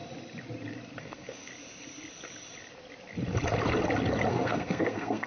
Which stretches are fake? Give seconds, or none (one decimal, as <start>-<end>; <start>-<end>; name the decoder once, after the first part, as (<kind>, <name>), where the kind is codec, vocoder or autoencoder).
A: 1.0-1.5 (codec, SNAC); 4.3-5.3